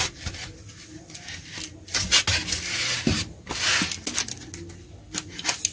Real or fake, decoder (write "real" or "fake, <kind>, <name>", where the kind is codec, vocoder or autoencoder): real